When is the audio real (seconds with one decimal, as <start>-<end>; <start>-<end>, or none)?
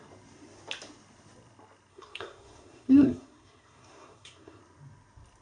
0.0-1.9; 4.6-5.4